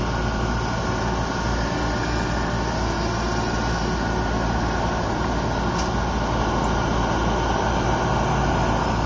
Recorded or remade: recorded